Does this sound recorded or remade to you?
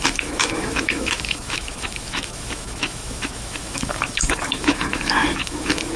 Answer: remade